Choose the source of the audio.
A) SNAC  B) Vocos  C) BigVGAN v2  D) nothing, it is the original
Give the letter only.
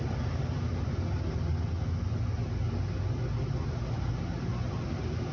D